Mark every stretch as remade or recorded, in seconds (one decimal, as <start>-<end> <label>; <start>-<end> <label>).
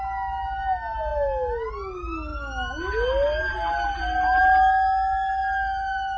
0.0-6.2 recorded